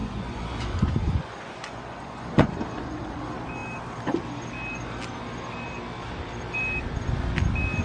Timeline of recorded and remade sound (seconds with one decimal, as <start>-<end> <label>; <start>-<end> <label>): 0.0-3.2 remade; 3.2-7.8 recorded